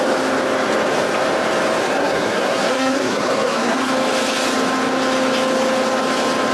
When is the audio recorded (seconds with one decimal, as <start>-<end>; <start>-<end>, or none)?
0.0-1.8; 3.9-6.5